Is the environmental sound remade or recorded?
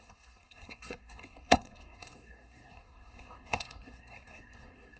remade